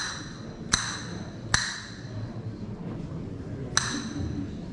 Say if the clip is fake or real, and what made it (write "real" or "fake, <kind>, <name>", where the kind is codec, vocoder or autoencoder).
real